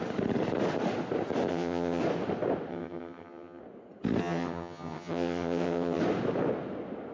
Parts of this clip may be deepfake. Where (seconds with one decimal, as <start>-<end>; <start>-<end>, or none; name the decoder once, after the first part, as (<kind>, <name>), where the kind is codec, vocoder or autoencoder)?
1.5-2.0 (vocoder, HiFi-GAN); 2.7-3.6; 4.2-6.0